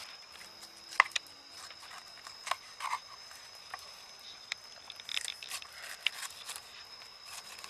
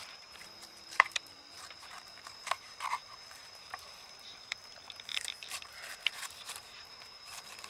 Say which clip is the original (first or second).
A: first